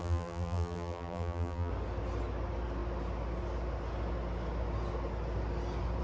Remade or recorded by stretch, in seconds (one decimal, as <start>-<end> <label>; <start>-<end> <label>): 0.0-1.7 remade; 1.7-6.0 recorded